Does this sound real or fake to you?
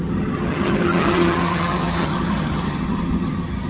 fake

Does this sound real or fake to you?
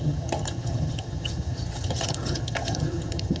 fake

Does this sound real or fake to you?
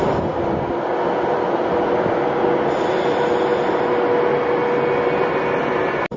real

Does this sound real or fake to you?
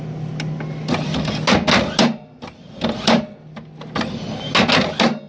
real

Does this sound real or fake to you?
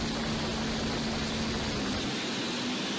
real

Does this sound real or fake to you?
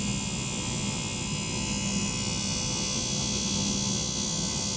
real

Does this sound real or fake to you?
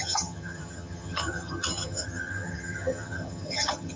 fake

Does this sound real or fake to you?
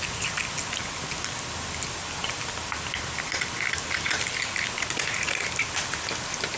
real